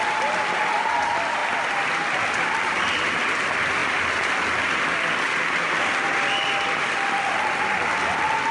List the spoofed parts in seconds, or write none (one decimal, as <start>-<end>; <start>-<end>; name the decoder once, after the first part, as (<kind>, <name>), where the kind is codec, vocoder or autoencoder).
none

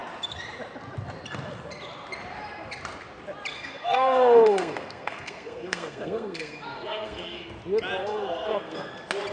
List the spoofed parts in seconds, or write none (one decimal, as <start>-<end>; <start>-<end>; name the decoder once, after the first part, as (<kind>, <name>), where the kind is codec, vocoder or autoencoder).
3.5-7.5 (codec, SNAC); 8.0-8.9

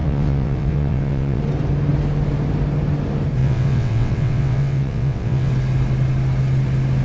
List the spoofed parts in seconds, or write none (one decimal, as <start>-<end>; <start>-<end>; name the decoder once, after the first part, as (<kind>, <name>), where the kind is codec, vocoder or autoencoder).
0.0-1.4 (vocoder, WaveNeXt); 3.4-5.5

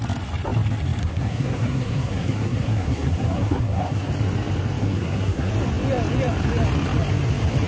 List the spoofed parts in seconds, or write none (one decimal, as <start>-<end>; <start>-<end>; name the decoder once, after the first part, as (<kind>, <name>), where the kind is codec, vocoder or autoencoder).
1.0-4.1 (codec, SNAC); 4.8-5.5

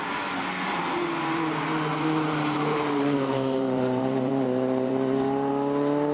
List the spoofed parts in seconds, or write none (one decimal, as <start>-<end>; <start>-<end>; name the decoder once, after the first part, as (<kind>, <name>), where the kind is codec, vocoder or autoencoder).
1.9-5.5 (vocoder, BigVGAN v2)

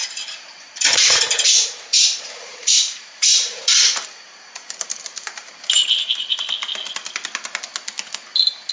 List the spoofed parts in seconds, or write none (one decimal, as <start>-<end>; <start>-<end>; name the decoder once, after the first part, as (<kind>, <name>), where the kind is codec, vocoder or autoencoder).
0.0-5.8 (vocoder, BigVGAN v2)

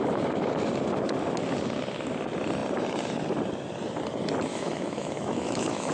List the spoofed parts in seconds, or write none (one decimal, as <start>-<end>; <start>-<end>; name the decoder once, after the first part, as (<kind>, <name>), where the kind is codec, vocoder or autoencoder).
4.5-5.9 (autoencoder, DAC-VAE)